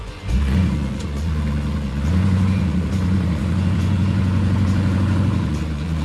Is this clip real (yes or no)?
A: no